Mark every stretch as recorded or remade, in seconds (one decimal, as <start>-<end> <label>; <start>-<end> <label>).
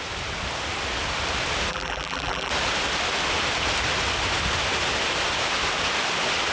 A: 0.0-1.7 recorded; 1.7-2.5 remade; 2.5-6.5 recorded